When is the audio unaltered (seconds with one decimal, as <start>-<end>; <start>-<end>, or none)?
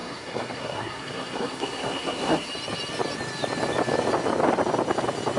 2.5-5.4